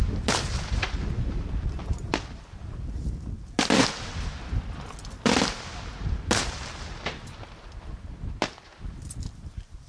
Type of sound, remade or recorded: recorded